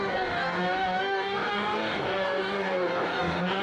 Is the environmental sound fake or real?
fake